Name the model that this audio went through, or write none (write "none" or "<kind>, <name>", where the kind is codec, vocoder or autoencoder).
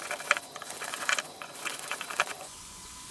vocoder, Vocos